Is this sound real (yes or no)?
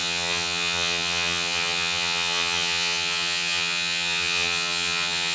no